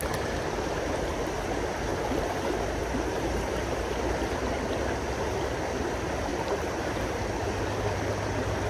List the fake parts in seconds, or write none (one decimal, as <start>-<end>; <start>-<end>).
1.9-4.0; 6.3-7.2